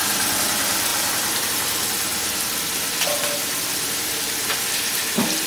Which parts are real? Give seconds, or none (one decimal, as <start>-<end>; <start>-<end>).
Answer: 2.1-3.0